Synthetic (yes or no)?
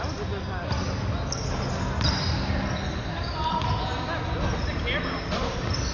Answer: no